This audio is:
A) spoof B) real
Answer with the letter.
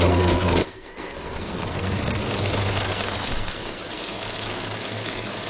A